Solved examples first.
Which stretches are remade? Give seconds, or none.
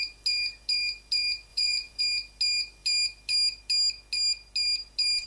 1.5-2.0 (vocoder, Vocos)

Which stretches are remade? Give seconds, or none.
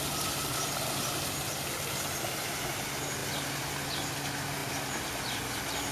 none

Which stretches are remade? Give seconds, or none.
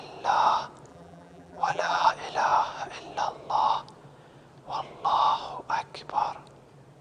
0.9-2.1 (vocoder, BigVGAN v2)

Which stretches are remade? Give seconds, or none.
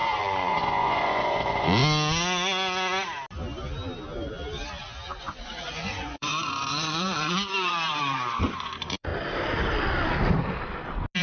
0.0-1.8 (vocoder, Vocos); 5.2-9.1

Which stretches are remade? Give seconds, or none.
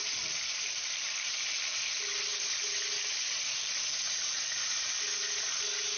none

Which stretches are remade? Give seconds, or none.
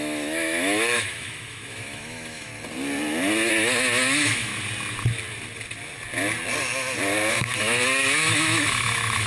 0.0-2.5 (autoencoder, DAC-VAE); 3.5-4.5; 7.3-9.3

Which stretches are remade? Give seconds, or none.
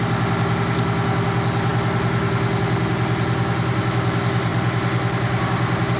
none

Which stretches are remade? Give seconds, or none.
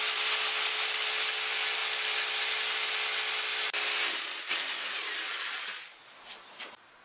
none